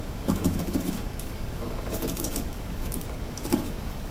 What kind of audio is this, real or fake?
fake